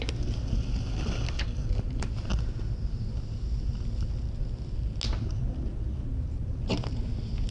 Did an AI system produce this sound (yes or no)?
no